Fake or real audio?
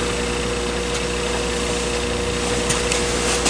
real